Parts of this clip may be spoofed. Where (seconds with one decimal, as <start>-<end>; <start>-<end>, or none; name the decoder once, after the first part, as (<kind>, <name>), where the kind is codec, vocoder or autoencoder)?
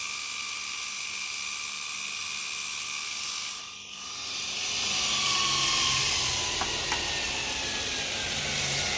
none